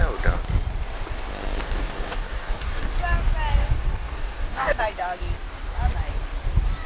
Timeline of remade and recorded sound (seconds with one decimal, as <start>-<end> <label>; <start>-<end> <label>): 0.0-1.6 recorded; 1.6-2.9 remade; 2.9-3.6 recorded; 3.6-4.8 remade; 4.8-6.9 recorded